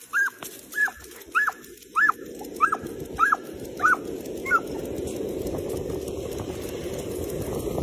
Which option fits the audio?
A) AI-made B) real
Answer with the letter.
B